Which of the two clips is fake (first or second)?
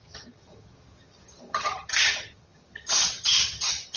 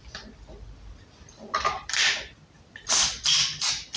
first